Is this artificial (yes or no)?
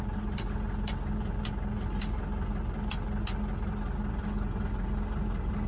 no